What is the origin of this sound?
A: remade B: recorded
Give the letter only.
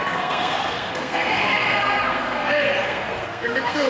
A